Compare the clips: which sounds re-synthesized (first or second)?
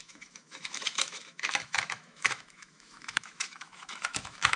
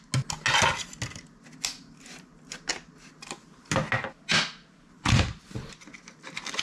first